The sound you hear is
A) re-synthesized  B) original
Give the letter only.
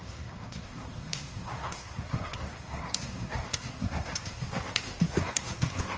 A